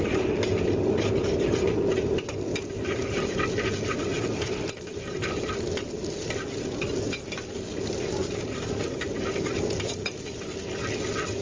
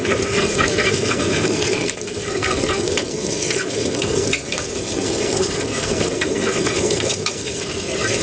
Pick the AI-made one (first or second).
second